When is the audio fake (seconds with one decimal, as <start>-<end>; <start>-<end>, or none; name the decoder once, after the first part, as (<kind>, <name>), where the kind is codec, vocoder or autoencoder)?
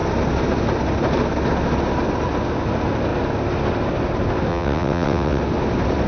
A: 4.5-5.4 (vocoder, WaveNeXt)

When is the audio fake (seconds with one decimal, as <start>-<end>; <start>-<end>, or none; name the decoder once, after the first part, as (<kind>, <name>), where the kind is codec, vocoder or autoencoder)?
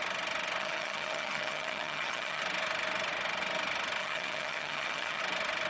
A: 0.6-2.4 (vocoder, HiFi-GAN); 4.0-5.2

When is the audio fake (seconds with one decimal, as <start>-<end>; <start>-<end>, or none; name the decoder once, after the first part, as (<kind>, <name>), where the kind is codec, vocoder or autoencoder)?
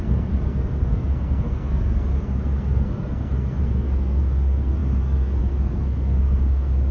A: 0.0-6.9 (codec, SNAC)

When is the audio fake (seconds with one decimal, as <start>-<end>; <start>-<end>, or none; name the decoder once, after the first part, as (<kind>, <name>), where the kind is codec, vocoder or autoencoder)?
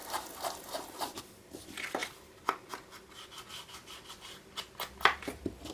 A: none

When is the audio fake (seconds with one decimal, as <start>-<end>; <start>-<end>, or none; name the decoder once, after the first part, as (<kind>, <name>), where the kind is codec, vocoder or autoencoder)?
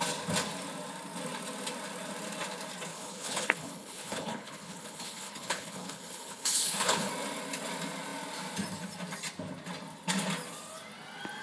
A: 2.9-7.1 (codec, HILCodec)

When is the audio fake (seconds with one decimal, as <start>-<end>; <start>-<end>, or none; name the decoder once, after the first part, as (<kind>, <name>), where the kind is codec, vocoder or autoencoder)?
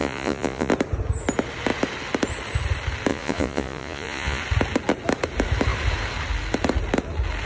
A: 0.0-0.7 (vocoder, Vocos); 3.1-4.4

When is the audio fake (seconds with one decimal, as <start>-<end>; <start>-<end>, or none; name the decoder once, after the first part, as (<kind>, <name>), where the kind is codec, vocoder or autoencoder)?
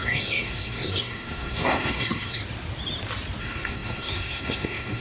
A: 0.0-2.4 (codec, SNAC); 3.4-5.0